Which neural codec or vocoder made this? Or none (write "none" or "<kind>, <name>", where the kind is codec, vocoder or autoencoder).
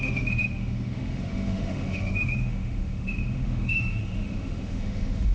autoencoder, DAC-VAE